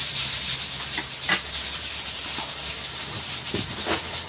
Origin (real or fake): real